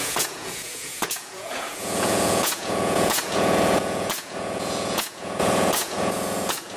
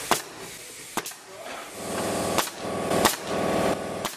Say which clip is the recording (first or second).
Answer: second